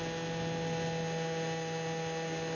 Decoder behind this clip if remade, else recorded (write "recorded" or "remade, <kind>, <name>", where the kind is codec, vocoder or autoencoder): recorded